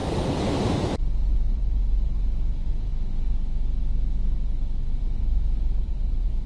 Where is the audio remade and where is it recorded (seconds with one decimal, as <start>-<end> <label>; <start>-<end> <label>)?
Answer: 0.0-1.0 recorded; 1.0-2.9 remade; 2.9-4.9 recorded; 4.9-6.5 remade